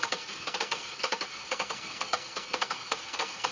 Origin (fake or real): fake